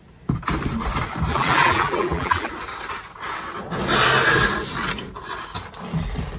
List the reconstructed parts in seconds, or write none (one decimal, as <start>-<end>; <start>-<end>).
1.3-2.5